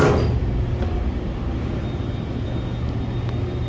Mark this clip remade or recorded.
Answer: recorded